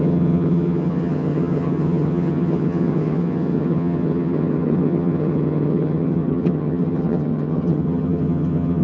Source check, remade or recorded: remade